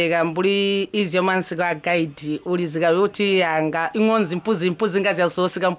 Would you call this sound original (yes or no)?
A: yes